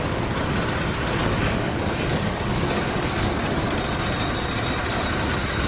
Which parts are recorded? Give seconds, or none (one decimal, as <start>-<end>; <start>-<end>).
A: 0.0-1.2; 3.3-5.7